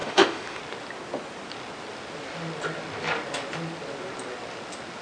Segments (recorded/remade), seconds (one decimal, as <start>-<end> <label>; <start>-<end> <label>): 0.0-0.6 remade; 0.6-5.0 recorded